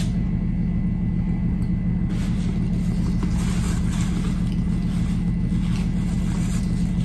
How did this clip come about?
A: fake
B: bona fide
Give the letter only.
B